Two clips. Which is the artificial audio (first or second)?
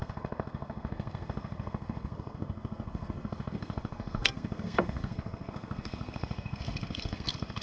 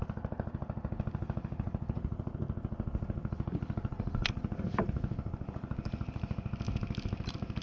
first